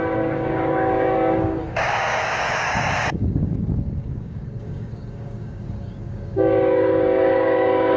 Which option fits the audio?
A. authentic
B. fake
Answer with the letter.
B